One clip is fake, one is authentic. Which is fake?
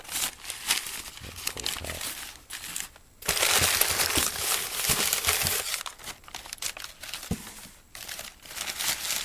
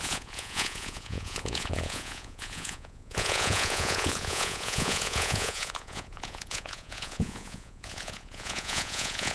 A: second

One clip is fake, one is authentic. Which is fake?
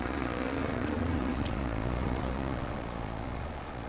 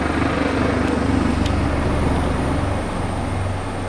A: first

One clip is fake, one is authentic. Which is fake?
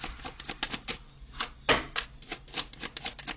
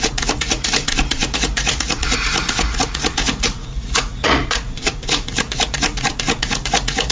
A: second